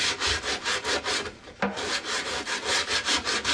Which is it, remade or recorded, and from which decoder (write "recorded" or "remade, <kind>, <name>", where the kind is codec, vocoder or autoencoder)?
remade, vocoder, BigVGAN v2